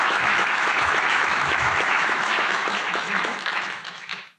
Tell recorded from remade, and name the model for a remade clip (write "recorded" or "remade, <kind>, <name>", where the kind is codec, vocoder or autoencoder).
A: remade, autoencoder, DAC-VAE